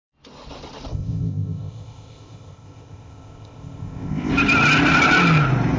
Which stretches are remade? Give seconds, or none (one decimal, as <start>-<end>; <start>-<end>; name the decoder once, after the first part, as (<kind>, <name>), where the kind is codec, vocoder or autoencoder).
0.9-4.3 (codec, ZipCodec)